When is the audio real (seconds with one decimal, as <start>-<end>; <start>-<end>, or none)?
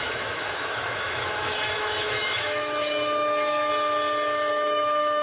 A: 3.7-4.5